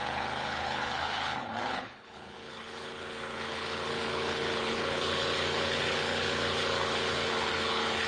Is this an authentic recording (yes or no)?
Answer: no